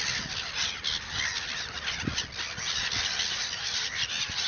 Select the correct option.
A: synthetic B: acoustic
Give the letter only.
B